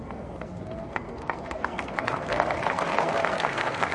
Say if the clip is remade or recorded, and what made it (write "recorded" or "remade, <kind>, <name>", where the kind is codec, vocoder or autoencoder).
remade, codec, SNAC